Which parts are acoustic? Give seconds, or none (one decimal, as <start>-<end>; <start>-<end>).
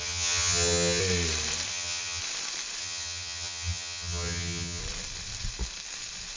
1.0-1.7; 2.2-2.8; 4.8-6.4